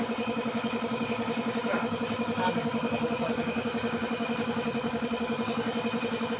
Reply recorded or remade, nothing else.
remade